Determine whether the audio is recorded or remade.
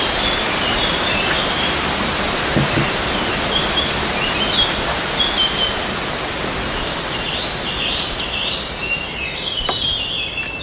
recorded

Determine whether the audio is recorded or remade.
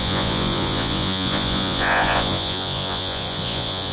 remade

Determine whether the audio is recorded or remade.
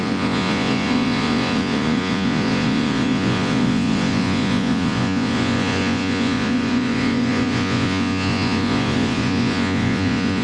remade